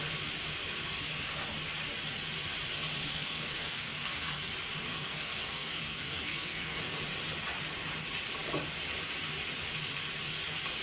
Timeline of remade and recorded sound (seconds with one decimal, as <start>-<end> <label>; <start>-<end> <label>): 0.0-3.1 recorded; 3.1-4.5 remade; 4.5-4.9 recorded; 4.9-7.0 remade; 7.0-10.8 recorded